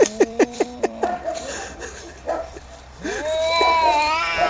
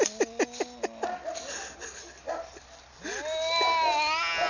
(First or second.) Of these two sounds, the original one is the second